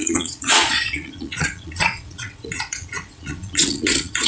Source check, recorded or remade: remade